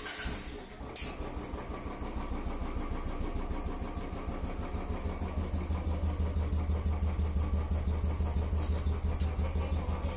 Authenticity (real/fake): real